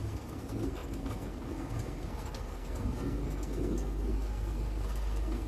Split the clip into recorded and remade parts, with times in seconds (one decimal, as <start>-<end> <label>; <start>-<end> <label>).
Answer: 0.0-5.5 remade